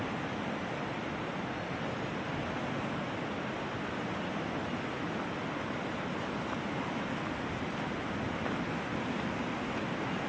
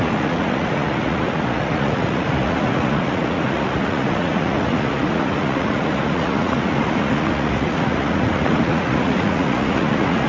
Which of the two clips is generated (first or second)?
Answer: second